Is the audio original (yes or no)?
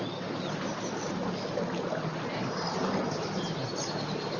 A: yes